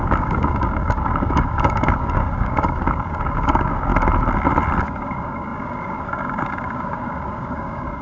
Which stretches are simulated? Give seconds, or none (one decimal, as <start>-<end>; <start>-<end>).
0.0-3.9; 4.8-8.0